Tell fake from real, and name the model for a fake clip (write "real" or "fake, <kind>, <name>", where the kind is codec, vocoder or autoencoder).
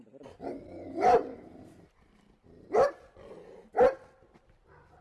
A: real